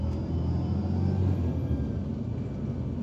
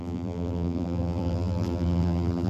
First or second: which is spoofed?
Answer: second